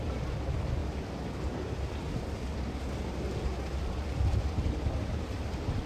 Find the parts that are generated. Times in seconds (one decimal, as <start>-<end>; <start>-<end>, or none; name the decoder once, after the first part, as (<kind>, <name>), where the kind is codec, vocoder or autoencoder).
none